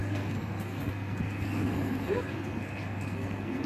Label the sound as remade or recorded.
remade